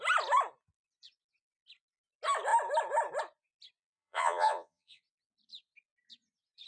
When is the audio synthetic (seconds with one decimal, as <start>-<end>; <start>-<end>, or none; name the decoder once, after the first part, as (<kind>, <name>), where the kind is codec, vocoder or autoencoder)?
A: 3.8-5.0 (vocoder, Vocos)